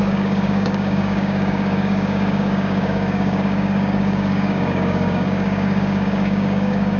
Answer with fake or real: fake